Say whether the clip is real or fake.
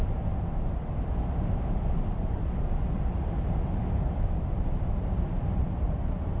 real